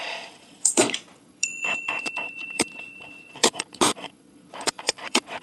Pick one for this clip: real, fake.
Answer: fake